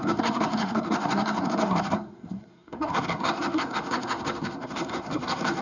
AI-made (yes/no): yes